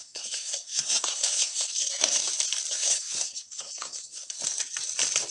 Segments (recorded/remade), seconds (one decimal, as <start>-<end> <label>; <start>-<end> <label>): 0.0-2.2 remade; 2.2-2.7 recorded; 2.7-4.4 remade; 4.4-5.3 recorded